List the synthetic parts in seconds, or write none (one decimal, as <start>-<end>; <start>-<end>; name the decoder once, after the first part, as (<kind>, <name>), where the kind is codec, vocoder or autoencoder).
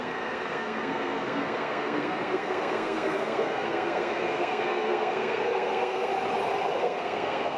0.0-6.1 (codec, SNAC); 6.8-7.6